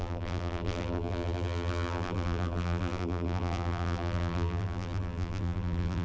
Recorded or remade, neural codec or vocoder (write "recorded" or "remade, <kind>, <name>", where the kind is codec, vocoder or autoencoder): remade, vocoder, BigVGAN v2